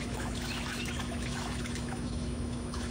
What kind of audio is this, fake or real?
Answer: fake